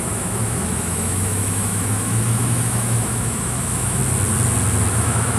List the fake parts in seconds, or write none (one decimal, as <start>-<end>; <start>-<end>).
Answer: 0.0-4.0; 4.9-5.4